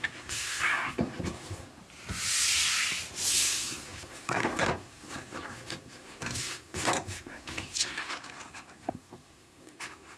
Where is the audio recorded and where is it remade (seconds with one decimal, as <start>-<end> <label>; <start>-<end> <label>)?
0.0-1.8 remade; 1.8-3.3 recorded; 3.3-10.2 remade